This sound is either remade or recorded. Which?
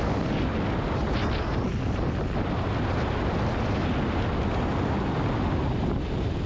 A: recorded